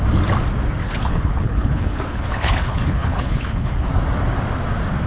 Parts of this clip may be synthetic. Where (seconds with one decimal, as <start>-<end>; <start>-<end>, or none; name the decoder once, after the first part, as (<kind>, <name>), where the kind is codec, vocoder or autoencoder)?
0.8-3.9 (codec, HILCodec)